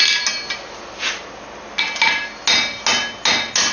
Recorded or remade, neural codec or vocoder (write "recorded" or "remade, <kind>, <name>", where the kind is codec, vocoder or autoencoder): recorded